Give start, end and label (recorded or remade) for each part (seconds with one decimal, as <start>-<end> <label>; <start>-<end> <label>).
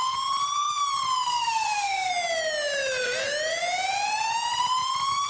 0.0-1.3 recorded; 1.3-2.1 remade; 2.1-5.3 recorded